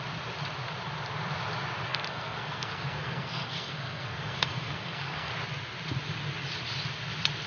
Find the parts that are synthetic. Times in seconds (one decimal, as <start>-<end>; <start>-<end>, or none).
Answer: 1.9-5.3